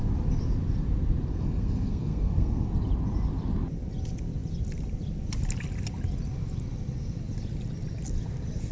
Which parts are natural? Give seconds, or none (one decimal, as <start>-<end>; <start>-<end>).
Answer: 0.0-1.3; 2.7-8.7